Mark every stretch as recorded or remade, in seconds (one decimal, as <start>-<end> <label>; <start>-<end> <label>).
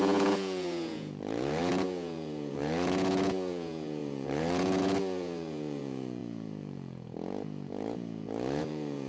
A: 0.0-9.1 remade